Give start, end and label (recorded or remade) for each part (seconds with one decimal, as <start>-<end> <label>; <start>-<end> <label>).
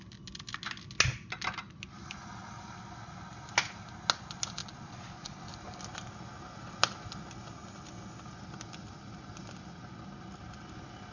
0.0-4.6 recorded; 4.6-5.4 remade; 5.4-11.1 recorded